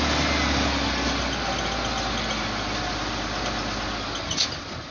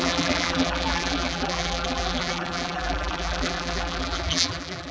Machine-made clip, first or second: second